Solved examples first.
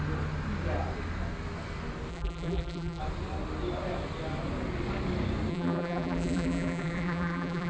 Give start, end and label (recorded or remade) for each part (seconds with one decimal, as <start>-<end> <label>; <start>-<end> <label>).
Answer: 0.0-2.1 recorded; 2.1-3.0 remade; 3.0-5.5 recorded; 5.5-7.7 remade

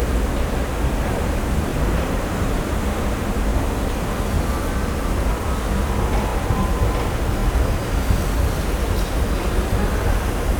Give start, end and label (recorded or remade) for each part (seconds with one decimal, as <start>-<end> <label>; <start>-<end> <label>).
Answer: 0.0-1.7 recorded; 1.7-2.6 remade; 2.6-10.6 recorded

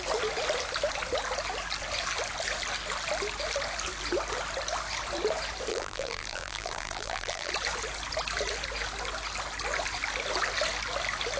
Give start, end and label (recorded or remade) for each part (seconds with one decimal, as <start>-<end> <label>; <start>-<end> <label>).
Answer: 0.0-5.7 recorded; 5.7-7.5 remade; 7.5-11.4 recorded

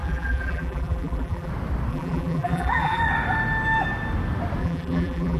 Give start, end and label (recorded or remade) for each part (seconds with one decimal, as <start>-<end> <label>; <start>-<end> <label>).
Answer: 0.0-1.5 remade; 1.5-1.9 recorded; 1.9-3.0 remade; 3.0-4.6 recorded; 4.6-5.4 remade

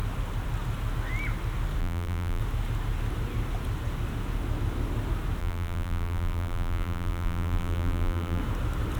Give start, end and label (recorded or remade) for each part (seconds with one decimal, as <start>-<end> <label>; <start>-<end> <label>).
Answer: 0.0-1.8 recorded; 1.8-2.4 remade; 2.4-5.4 recorded; 5.4-8.4 remade; 8.4-9.0 recorded

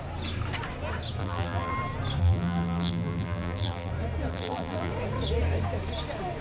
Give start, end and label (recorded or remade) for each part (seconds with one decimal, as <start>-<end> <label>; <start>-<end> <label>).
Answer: 0.0-1.2 recorded; 1.2-1.7 remade; 1.7-2.2 recorded; 2.2-3.9 remade; 3.9-4.3 recorded; 4.3-4.9 remade; 4.9-6.4 recorded

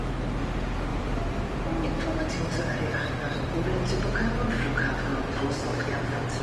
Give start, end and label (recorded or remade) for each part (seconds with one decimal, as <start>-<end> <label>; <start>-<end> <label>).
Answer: 0.0-0.9 recorded; 0.9-2.3 remade; 2.3-5.1 recorded; 5.1-6.4 remade

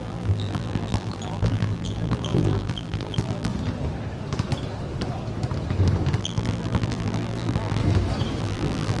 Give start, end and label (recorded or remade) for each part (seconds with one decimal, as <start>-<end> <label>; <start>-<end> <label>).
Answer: 0.0-3.5 remade; 3.5-6.2 recorded; 6.2-7.8 remade; 7.8-8.4 recorded; 8.4-9.0 remade